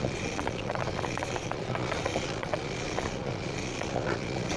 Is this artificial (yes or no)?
yes